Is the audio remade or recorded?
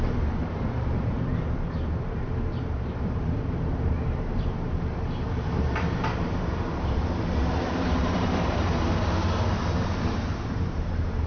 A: remade